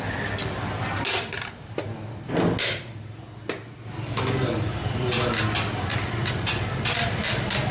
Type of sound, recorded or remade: recorded